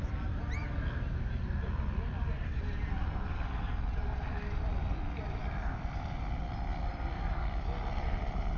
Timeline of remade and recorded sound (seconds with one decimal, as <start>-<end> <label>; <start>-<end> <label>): 0.0-8.6 recorded